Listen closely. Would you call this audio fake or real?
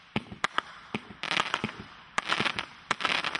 real